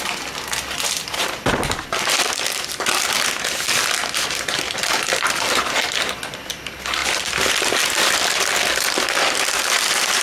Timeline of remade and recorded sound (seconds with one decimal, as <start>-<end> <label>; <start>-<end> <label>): 0.0-7.0 recorded; 7.0-7.5 remade; 7.5-10.2 recorded